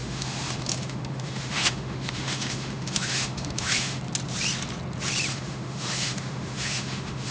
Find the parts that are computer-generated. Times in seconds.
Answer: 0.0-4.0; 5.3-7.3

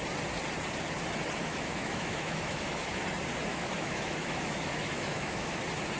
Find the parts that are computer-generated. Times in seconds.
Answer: 1.4-3.0; 3.5-5.6

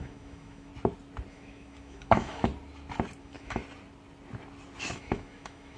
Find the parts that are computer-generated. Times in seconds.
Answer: 0.0-0.7; 1.3-2.5; 3.2-3.6; 4.8-5.8

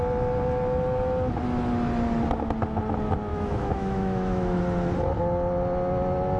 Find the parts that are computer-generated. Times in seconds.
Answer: 3.3-4.6

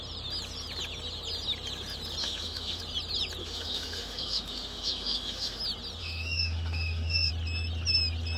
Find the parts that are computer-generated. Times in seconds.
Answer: 2.2-2.8; 3.4-5.6; 6.0-7.3

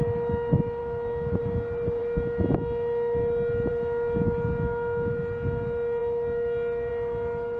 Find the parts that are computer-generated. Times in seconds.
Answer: 0.8-1.4